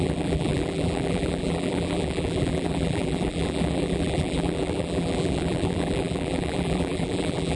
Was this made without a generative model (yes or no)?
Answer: no